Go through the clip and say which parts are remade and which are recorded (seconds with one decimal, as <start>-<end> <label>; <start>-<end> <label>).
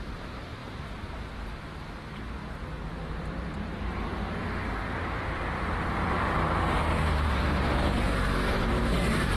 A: 0.0-9.4 remade